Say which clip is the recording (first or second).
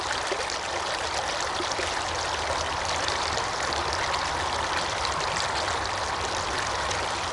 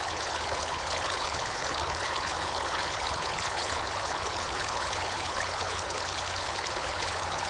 first